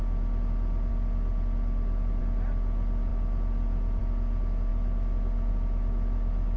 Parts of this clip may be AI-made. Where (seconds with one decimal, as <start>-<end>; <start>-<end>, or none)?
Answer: none